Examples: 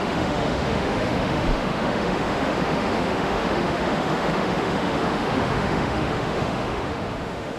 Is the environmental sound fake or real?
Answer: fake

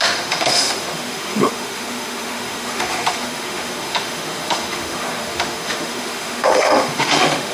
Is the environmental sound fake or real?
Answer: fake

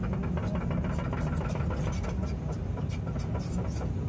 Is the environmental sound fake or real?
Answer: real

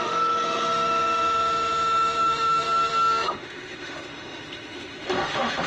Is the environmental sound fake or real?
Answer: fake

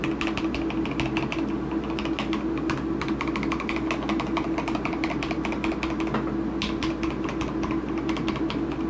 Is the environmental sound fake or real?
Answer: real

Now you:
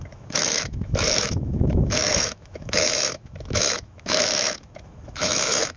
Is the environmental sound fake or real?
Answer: fake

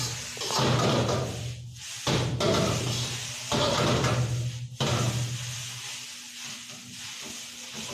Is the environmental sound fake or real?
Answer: real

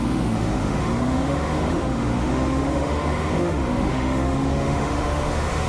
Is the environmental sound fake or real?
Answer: fake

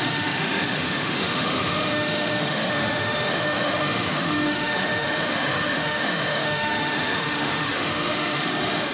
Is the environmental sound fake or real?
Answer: fake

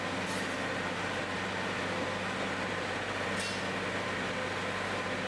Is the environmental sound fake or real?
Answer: real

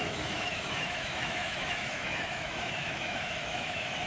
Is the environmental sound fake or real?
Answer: fake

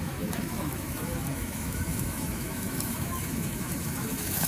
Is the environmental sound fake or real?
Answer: fake